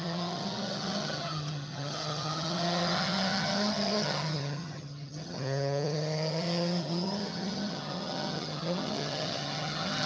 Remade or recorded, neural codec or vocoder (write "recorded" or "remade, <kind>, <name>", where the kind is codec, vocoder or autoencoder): remade, vocoder, HiFi-GAN